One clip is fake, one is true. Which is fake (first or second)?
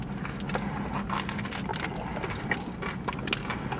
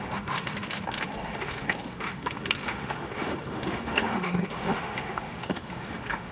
second